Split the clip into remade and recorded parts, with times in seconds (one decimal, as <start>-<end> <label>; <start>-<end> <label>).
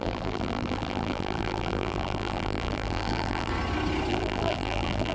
0.0-3.5 remade; 3.5-4.1 recorded; 4.1-5.1 remade